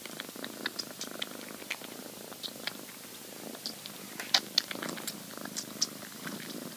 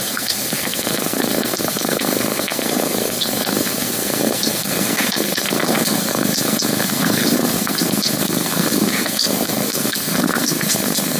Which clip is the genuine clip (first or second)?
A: first